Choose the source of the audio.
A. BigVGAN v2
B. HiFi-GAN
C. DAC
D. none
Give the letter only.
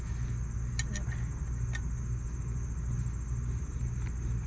D